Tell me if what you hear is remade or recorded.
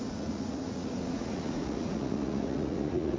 remade